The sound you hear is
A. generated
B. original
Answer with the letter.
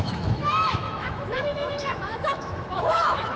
A